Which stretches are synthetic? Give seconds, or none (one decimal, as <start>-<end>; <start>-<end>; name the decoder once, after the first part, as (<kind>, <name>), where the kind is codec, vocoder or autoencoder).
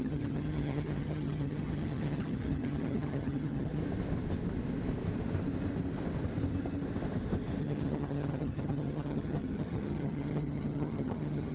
0.0-3.8 (vocoder, HiFi-GAN); 7.6-11.5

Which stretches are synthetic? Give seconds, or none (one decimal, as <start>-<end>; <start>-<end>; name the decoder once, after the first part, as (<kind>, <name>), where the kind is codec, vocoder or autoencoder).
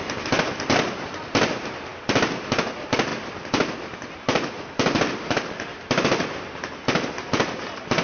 none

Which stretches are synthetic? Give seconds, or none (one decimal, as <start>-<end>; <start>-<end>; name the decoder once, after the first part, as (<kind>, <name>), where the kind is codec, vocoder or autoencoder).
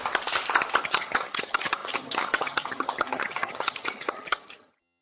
0.8-5.0 (vocoder, HiFi-GAN)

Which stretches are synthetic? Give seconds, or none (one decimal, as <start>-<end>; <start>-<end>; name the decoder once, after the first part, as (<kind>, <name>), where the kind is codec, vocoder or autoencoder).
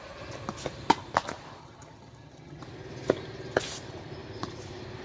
1.6-2.6 (vocoder, HiFi-GAN)